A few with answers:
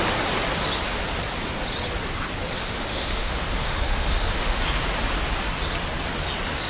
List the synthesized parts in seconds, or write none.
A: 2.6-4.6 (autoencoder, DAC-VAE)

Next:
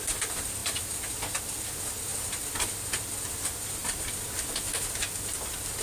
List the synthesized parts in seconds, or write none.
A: none

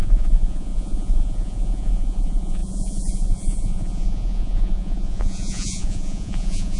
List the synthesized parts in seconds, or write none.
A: 0.0-6.8 (vocoder, Vocos)

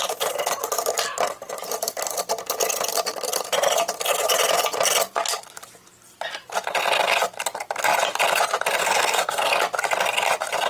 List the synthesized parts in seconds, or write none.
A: 8.8-9.5 (codec, SNAC)

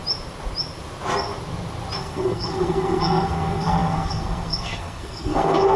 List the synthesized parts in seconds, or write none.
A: 2.0-5.8 (codec, SNAC)

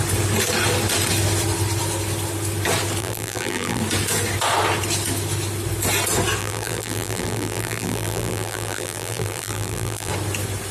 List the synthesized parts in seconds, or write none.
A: 3.0-3.8 (vocoder, BigVGAN v2); 6.4-10.1

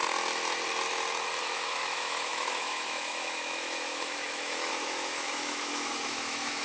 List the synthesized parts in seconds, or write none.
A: 1.4-6.6 (autoencoder, DAC-VAE)

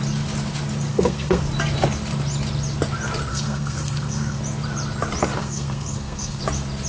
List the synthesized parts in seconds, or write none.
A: 0.9-1.4 (codec, SNAC); 3.3-4.4; 5.4-6.4